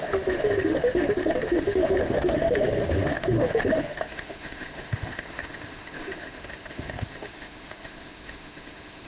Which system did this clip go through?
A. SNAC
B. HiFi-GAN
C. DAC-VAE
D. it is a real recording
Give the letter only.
C